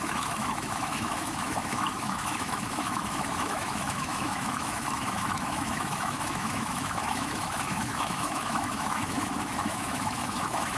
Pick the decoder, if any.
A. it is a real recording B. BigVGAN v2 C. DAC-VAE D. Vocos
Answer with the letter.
C